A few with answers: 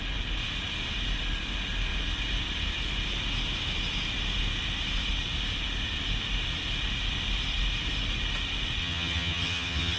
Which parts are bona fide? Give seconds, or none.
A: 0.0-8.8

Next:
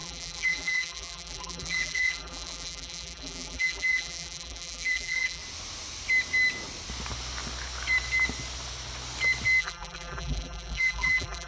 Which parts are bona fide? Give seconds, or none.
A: 5.4-9.6